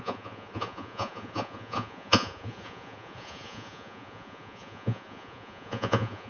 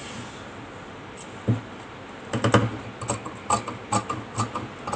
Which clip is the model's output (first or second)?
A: first